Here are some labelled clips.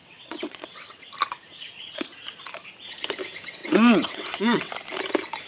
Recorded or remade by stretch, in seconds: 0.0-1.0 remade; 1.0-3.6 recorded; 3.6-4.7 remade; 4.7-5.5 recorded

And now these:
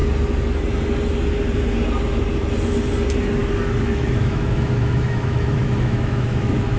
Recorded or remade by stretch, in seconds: 0.0-3.8 recorded; 3.8-6.8 remade

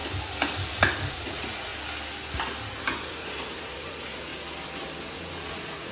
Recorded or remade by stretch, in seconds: 0.0-1.1 recorded; 1.1-1.7 remade; 1.7-3.1 recorded; 3.1-4.3 remade; 4.3-5.1 recorded; 5.1-5.9 remade

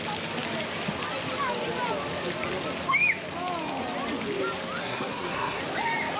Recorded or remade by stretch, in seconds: 0.0-4.8 recorded; 4.8-5.6 remade; 5.6-6.2 recorded

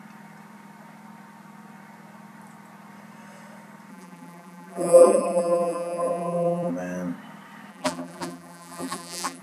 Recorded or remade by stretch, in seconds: 0.0-3.9 recorded; 3.9-6.7 remade; 6.7-7.7 recorded; 7.7-9.4 remade

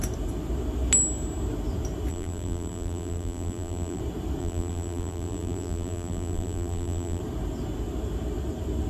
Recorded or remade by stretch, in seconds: 0.0-2.1 recorded; 2.1-4.0 remade; 4.0-4.4 recorded; 4.4-7.2 remade; 7.2-8.9 recorded